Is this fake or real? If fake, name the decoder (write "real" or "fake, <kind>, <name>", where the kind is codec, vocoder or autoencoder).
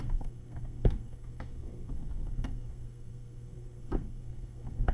fake, codec, SNAC